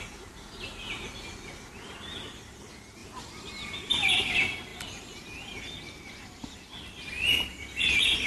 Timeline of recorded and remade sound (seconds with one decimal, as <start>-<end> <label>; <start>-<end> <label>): 0.0-8.3 recorded